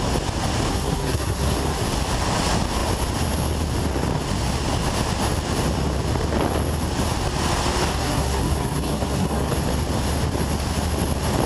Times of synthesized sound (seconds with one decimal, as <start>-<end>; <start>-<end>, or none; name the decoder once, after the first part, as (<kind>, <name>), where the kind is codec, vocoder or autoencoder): 0.7-1.8 (codec, SNAC); 7.9-9.5